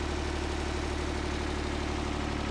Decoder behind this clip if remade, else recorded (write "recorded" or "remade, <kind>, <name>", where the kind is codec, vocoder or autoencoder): recorded